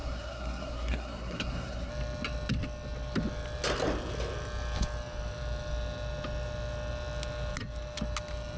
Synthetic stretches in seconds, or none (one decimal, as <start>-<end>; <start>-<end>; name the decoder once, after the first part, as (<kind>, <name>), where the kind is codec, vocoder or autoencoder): 0.0-1.9 (codec, SNAC)